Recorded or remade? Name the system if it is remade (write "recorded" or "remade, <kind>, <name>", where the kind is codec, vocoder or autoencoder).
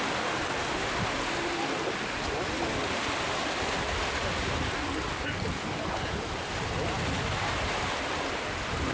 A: recorded